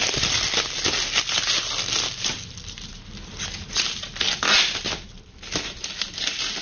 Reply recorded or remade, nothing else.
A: remade